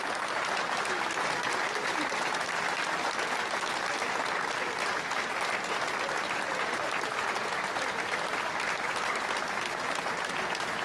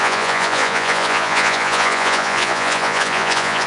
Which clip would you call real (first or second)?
first